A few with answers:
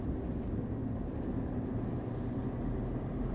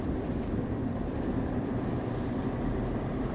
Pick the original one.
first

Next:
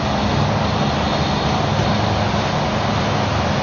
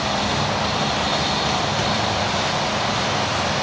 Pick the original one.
first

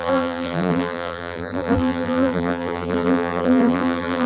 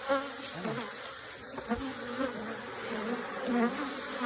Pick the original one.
second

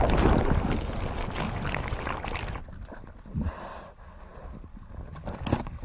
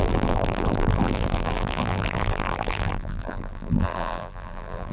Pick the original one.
first